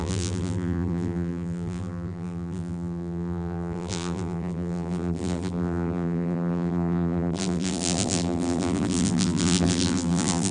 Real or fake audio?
fake